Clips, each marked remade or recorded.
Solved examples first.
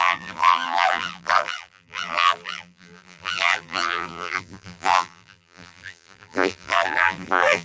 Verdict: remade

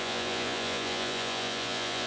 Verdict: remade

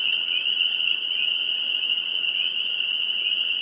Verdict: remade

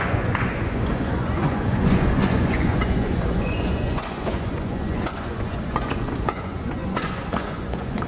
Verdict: remade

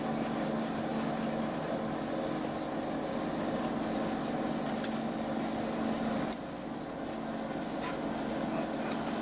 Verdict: recorded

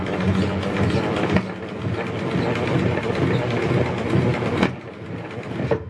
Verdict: recorded